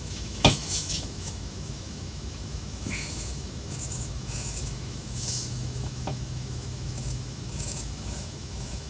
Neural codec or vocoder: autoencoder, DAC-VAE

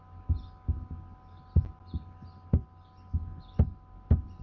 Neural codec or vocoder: none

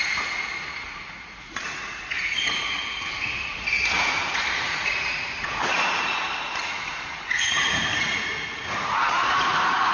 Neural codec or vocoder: vocoder, Vocos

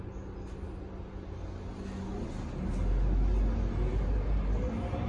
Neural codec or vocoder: none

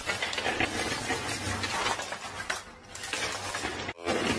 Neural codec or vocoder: none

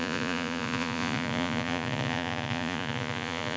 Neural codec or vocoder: vocoder, Vocos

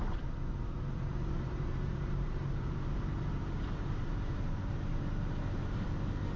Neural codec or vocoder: vocoder, BigVGAN v2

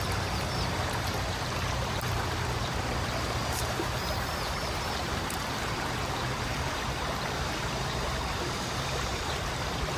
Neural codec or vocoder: vocoder, BigVGAN v2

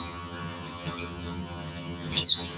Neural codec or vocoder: vocoder, HiFi-GAN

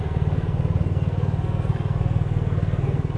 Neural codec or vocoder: codec, SNAC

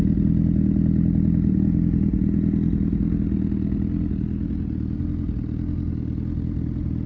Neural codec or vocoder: none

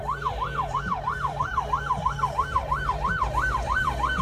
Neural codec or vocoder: vocoder, BigVGAN v2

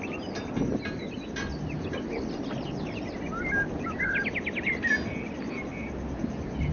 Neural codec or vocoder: none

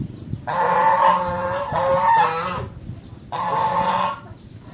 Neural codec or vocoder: none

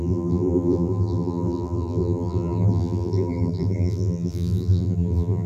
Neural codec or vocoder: vocoder, BigVGAN v2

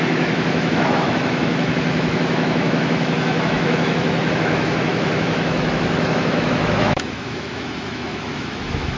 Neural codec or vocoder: autoencoder, DAC-VAE